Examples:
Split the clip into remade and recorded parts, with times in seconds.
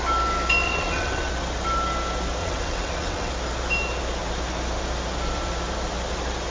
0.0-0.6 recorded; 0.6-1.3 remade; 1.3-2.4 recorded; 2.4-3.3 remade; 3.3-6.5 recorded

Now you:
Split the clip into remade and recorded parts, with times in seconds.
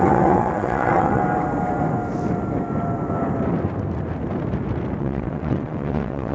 0.0-1.2 remade; 1.2-5.0 recorded; 5.0-6.3 remade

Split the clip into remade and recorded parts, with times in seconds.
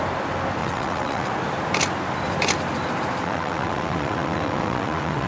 0.0-0.6 recorded; 0.6-1.3 remade; 1.3-3.2 recorded; 3.2-5.3 remade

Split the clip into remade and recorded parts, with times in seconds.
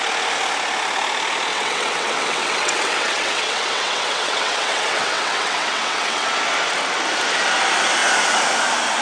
0.0-1.5 recorded; 1.5-6.3 remade; 6.3-9.0 recorded